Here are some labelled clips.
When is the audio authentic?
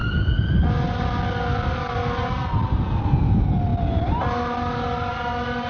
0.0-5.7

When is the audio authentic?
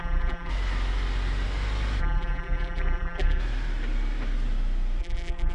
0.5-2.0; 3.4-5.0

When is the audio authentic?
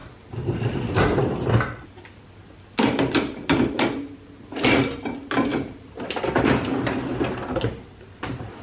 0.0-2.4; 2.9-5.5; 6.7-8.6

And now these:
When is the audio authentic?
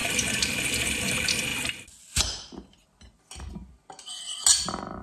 1.1-5.0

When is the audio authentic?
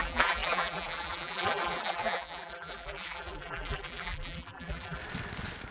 5.0-5.7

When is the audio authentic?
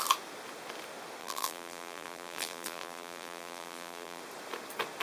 0.0-1.2; 4.2-5.0